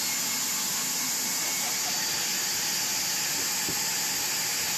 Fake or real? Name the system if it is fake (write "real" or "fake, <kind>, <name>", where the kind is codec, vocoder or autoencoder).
real